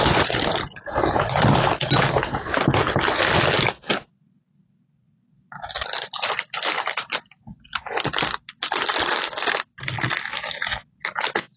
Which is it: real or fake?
real